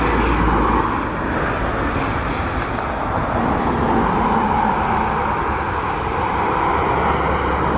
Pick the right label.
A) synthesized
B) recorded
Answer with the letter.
B